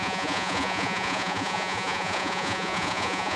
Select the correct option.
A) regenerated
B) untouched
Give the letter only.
A